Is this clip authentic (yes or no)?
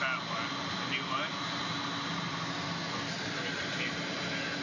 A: yes